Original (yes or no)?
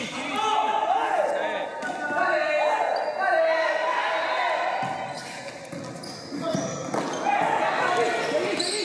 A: yes